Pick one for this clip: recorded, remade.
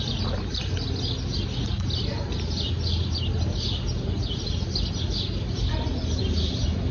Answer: recorded